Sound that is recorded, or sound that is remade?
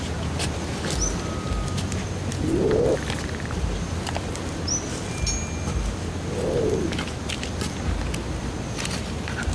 recorded